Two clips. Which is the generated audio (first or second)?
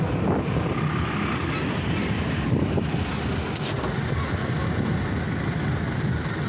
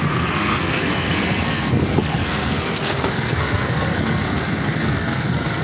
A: second